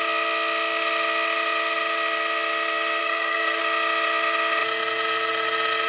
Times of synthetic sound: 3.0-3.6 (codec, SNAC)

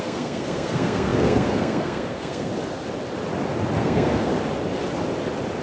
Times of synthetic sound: 0.0-2.5 (codec, SNAC); 3.8-4.3

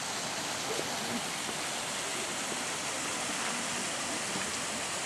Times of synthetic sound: none

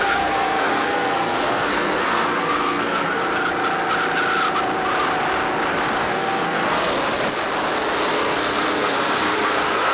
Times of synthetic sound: 0.0-3.2 (codec, SNAC); 6.0-6.9; 8.1-9.9

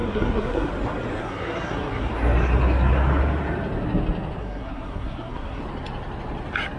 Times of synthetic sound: 0.0-0.7 (codec, SNAC); 1.2-2.1; 4.4-5.6

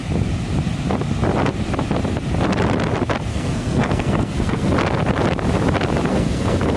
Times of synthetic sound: 3.3-4.7 (codec, SNAC); 6.1-6.8

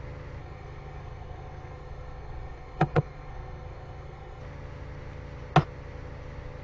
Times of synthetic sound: 0.4-4.4 (codec, SNAC)